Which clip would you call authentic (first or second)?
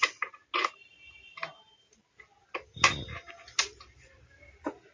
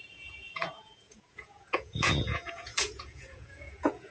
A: first